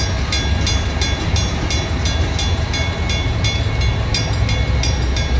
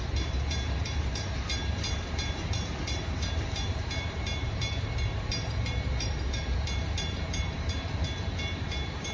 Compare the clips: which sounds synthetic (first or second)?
second